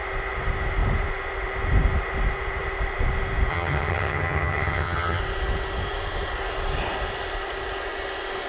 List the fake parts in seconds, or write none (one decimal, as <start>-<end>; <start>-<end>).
3.5-5.2